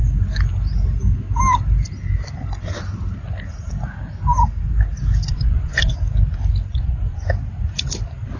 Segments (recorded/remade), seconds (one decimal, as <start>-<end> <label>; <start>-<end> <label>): 0.0-5.3 recorded; 5.3-5.9 remade; 5.9-6.7 recorded; 6.7-7.3 remade; 7.3-8.4 recorded